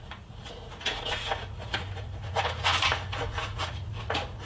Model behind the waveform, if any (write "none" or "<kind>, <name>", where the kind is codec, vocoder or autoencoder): vocoder, Vocos